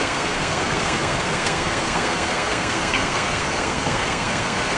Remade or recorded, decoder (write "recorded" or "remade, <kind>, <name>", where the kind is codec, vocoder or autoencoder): remade, codec, SNAC